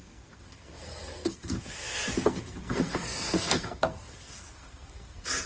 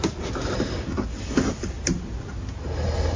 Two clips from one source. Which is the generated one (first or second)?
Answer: first